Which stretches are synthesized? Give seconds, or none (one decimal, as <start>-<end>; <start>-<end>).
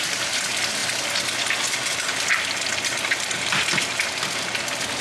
none